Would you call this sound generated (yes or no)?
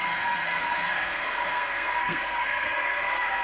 yes